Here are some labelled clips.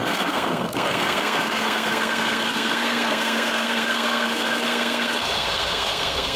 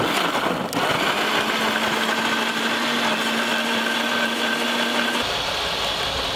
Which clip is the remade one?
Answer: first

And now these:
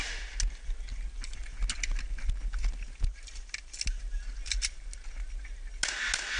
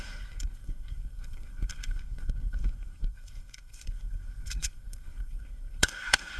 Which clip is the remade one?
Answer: second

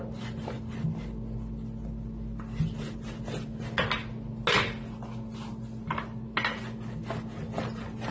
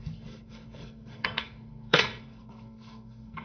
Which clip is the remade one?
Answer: second